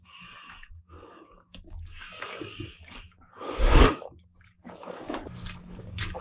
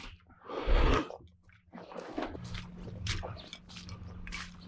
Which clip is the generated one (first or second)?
first